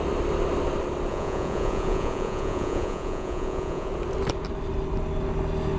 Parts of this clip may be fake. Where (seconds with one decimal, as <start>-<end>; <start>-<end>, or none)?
1.1-3.9